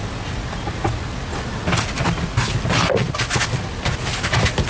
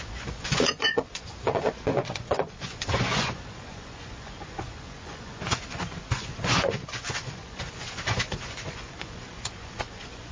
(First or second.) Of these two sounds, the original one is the first